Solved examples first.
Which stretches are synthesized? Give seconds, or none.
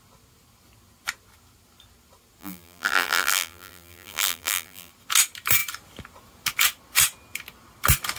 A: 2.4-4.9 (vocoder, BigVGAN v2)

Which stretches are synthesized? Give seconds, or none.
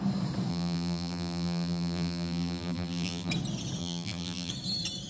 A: 0.5-3.3 (vocoder, BigVGAN v2); 3.8-4.5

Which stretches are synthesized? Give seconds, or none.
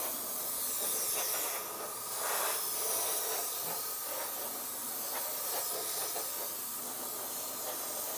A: none